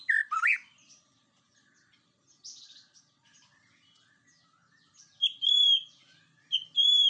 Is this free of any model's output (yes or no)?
yes